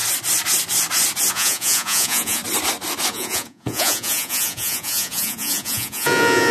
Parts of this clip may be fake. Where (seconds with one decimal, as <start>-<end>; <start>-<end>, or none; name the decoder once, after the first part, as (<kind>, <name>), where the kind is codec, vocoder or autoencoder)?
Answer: 1.3-2.4 (vocoder, Vocos); 3.1-6.5